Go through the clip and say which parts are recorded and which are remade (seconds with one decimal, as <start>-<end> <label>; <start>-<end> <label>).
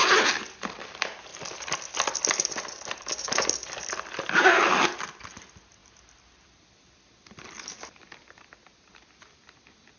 0.0-1.3 recorded; 1.3-5.0 remade; 5.0-5.8 recorded; 5.8-8.4 remade; 8.4-10.0 recorded